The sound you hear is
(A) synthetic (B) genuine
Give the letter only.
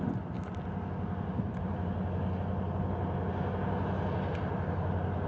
B